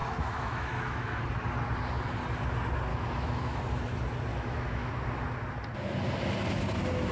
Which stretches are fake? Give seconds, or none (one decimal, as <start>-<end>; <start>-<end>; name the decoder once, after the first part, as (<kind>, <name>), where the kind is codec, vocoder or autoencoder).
0.0-1.2 (autoencoder, DAC-VAE); 2.9-3.6; 4.3-4.9

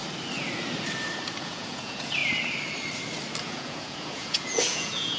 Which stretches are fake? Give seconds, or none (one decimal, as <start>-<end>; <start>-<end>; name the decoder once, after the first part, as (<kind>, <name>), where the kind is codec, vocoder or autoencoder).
1.4-2.2 (vocoder, Vocos); 3.4-5.2

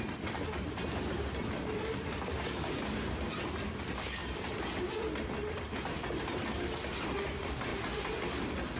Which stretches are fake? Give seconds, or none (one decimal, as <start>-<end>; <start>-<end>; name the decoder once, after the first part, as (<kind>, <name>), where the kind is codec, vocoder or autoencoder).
4.2-5.0 (vocoder, BigVGAN v2)

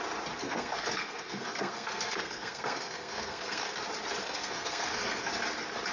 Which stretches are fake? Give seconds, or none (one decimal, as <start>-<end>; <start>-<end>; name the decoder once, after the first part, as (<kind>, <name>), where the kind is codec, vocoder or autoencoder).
0.4-3.8 (codec, SNAC); 4.2-5.3

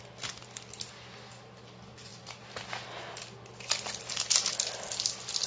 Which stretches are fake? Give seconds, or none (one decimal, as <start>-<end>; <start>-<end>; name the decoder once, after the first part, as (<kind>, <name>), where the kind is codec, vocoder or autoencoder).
none

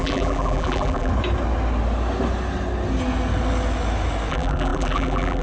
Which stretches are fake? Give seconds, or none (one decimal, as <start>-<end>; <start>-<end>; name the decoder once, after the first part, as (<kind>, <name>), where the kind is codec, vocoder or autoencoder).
0.0-1.1 (vocoder, BigVGAN v2); 4.3-5.4